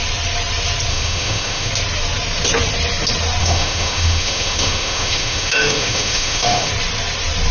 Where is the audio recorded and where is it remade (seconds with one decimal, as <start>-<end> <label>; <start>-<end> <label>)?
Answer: 0.0-0.9 recorded; 0.9-1.7 remade; 1.7-3.4 recorded; 3.4-6.7 remade; 6.7-7.5 recorded